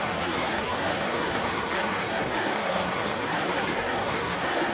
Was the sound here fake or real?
fake